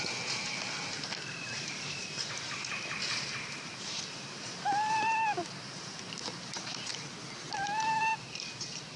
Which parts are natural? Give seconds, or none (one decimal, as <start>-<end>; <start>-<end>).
0.0-1.5; 4.9-5.4; 6.9-9.0